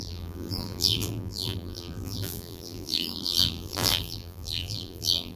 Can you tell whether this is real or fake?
fake